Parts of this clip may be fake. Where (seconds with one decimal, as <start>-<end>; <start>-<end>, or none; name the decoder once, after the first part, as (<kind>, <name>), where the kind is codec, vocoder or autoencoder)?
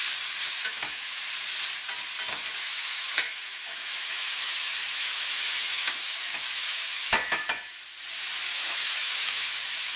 0.5-1.2 (autoencoder, DAC-VAE); 2.6-7.8; 8.5-10.0